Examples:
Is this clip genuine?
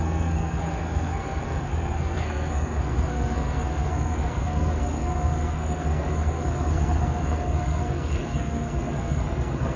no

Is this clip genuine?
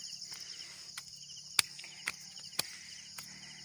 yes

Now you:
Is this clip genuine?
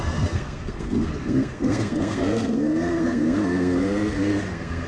no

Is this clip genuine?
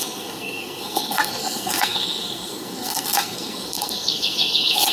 no